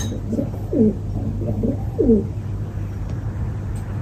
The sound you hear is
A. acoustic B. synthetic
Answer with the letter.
A